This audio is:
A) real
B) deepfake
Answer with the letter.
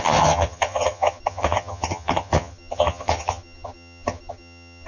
B